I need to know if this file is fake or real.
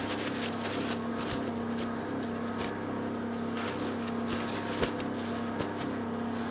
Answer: real